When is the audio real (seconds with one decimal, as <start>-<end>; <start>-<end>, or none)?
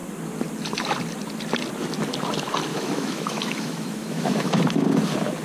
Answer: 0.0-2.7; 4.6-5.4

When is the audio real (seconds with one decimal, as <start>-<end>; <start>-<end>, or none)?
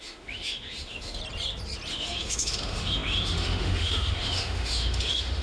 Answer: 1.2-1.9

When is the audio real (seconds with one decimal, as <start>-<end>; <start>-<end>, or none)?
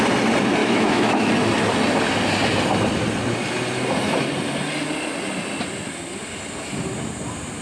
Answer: 0.0-0.6; 1.3-7.6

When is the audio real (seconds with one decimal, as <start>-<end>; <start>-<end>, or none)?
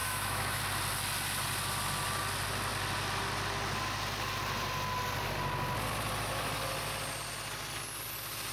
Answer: 0.6-8.5